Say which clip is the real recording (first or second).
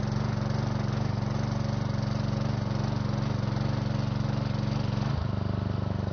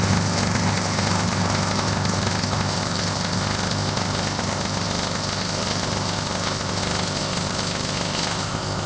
first